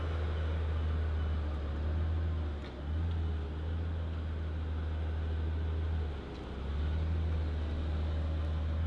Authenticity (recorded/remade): recorded